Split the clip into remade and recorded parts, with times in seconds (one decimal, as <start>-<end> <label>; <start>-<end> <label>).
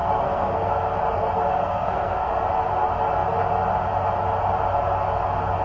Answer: 0.0-0.7 remade; 0.7-1.1 recorded; 1.1-2.3 remade; 2.3-5.6 recorded